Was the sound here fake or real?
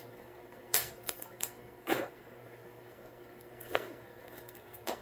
fake